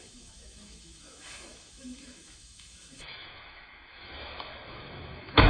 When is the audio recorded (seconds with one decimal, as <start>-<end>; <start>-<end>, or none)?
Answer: none